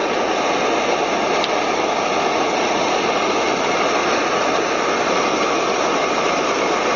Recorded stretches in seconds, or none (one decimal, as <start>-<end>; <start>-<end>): 0.6-2.3; 3.0-4.0; 4.7-7.0